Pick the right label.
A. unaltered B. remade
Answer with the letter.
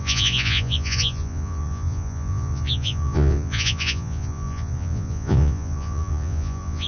B